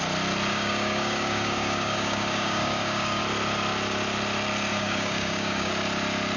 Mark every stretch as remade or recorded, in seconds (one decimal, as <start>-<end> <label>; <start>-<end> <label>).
0.0-0.5 recorded; 0.5-3.2 remade; 3.2-4.7 recorded; 4.7-5.7 remade; 5.7-6.4 recorded